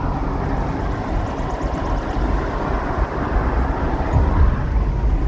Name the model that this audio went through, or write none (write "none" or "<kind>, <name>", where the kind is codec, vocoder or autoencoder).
none